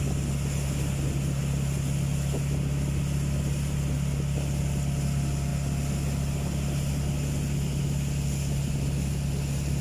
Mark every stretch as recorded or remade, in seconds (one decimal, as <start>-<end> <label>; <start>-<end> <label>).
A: 0.0-9.8 recorded